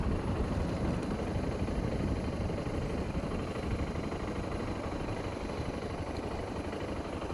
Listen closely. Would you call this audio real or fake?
fake